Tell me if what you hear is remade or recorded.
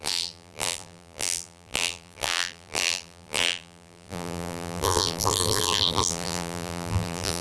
remade